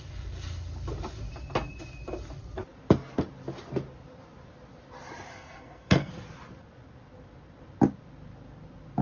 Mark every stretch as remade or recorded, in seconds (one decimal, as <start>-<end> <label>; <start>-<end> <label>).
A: 0.0-5.3 recorded; 5.3-6.1 remade; 6.1-9.0 recorded